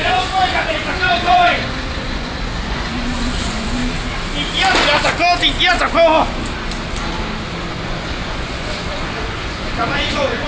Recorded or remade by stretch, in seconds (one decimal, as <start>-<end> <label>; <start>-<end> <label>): 0.0-3.8 remade; 3.8-7.7 recorded; 7.7-10.5 remade